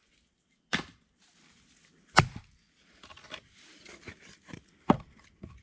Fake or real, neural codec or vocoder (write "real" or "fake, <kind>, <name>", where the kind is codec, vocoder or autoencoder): real